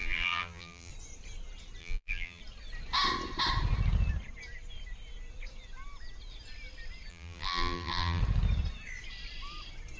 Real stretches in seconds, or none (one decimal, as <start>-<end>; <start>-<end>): 0.9-1.8; 2.4-7.1; 8.2-10.0